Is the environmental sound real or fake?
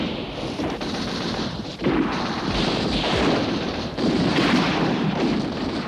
fake